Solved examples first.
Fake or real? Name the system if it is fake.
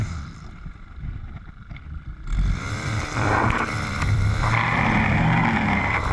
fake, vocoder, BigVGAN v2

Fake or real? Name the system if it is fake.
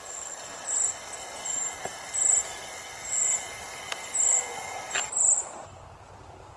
real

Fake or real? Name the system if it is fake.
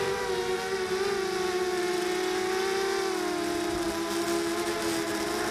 real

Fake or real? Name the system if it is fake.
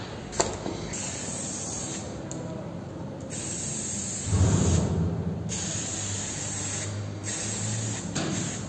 real